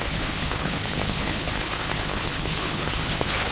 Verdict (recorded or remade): remade